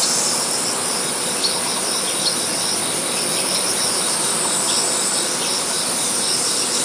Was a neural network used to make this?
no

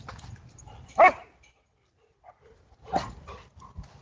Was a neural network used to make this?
no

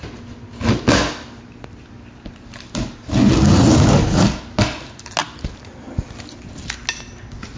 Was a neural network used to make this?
no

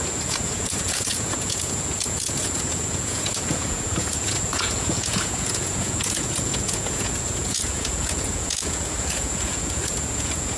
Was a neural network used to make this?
yes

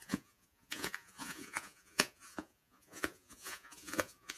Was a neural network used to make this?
yes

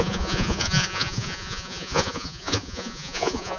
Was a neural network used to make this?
yes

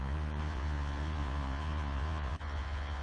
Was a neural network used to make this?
yes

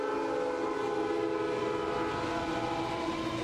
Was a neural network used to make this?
no